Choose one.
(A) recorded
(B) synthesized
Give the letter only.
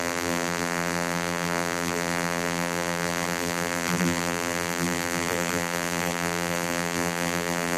B